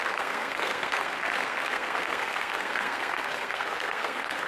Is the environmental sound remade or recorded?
remade